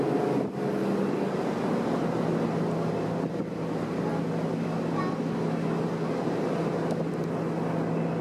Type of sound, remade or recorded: recorded